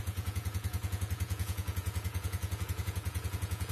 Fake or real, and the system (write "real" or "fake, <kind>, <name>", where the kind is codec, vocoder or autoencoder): fake, vocoder, Vocos